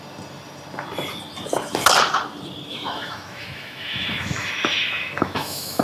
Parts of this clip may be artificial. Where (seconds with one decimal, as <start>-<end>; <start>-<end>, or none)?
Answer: 2.7-5.8